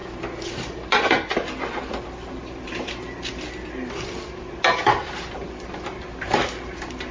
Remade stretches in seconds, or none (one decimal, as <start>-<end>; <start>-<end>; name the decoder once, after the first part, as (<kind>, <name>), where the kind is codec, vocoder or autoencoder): none